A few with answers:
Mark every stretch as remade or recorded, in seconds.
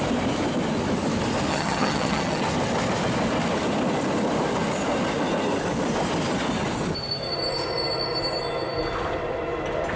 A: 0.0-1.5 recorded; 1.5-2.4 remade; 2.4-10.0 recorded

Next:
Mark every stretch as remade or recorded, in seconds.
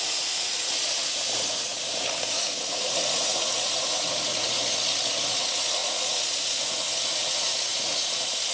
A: 0.0-8.5 remade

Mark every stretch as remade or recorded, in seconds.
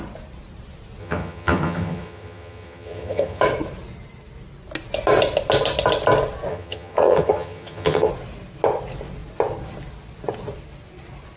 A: 0.0-1.0 recorded; 1.0-3.4 remade; 3.4-6.5 recorded; 6.5-8.1 remade; 8.1-11.4 recorded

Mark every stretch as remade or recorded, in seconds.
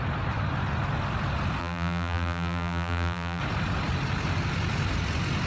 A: 0.0-1.6 recorded; 1.6-3.4 remade; 3.4-5.5 recorded